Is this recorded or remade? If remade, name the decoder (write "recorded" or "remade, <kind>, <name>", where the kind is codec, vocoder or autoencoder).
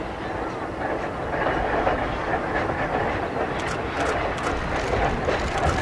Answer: recorded